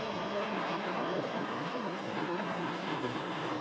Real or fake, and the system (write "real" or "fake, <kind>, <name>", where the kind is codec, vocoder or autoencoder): fake, codec, SNAC